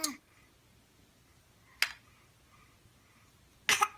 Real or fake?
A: real